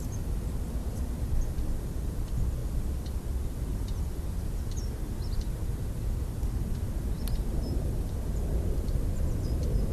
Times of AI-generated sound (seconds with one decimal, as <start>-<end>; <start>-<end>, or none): 0.0-3.7; 4.5-9.9